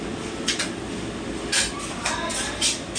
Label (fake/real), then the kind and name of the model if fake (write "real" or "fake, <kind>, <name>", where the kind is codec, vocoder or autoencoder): real